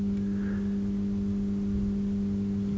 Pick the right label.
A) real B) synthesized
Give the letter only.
A